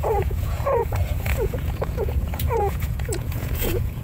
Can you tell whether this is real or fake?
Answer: fake